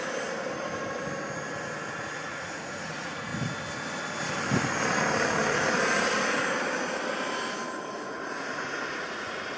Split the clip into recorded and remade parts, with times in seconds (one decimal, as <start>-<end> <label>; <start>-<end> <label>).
0.0-2.0 recorded; 2.0-3.3 remade; 3.3-7.9 recorded; 7.9-9.6 remade